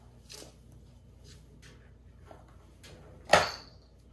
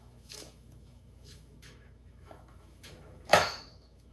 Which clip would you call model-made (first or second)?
second